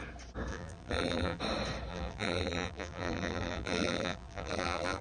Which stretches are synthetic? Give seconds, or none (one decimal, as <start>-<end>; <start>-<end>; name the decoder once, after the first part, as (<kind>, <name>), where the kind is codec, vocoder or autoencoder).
0.5-1.4 (vocoder, BigVGAN v2); 1.9-5.0